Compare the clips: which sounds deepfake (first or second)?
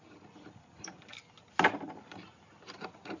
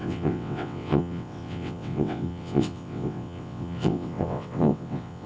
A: second